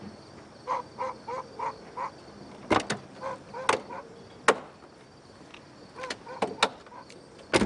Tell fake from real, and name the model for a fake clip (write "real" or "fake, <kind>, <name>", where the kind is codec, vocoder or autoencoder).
real